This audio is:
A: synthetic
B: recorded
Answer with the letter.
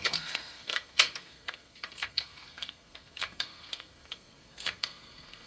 A